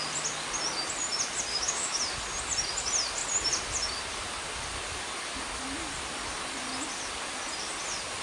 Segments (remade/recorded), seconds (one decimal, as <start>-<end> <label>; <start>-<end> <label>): 0.0-1.5 recorded; 1.5-2.0 remade; 2.0-8.2 recorded